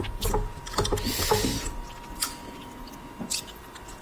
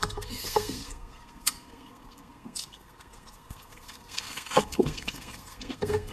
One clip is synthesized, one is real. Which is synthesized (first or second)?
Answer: second